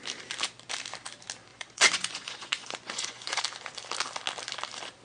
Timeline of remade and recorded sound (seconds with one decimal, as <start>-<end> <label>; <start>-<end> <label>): 0.0-1.5 recorded; 1.5-3.4 remade; 3.4-5.0 recorded